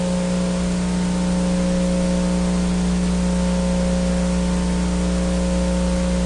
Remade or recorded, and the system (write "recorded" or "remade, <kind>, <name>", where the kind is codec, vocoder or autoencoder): recorded